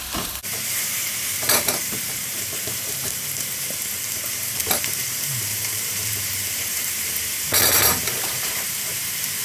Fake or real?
fake